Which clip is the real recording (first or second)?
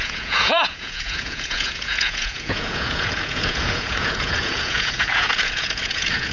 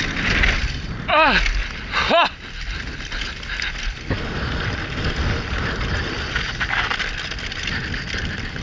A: second